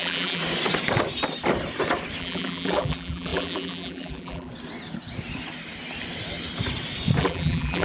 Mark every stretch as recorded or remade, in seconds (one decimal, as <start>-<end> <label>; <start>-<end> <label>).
0.0-0.4 remade; 0.4-2.2 recorded; 2.2-4.5 remade; 4.5-7.2 recorded; 7.2-7.8 remade